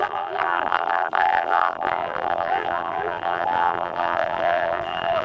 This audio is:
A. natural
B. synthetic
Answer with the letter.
B